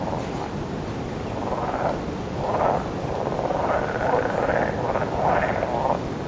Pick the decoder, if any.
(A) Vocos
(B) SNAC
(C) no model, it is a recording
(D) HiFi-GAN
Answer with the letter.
C